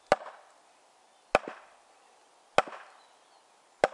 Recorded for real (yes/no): yes